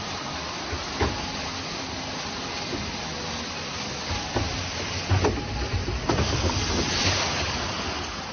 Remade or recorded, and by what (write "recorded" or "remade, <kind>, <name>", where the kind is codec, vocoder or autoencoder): recorded